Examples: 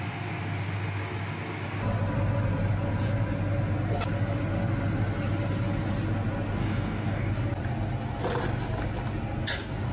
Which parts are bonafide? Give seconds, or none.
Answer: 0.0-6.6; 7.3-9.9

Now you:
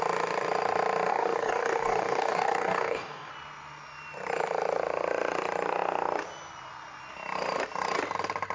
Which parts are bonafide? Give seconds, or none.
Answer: 0.0-1.1; 3.3-8.5

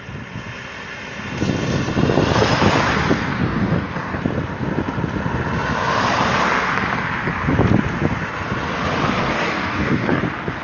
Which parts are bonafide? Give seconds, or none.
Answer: 0.0-3.4; 4.2-9.2; 10.2-10.6

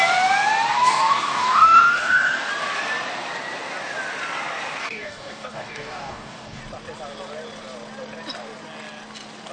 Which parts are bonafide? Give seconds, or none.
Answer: 0.0-0.7; 2.5-4.8; 6.6-9.5